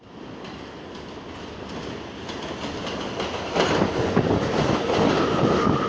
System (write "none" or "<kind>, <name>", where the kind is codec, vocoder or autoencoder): none